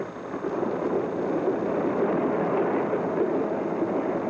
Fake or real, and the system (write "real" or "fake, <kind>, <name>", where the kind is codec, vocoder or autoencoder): real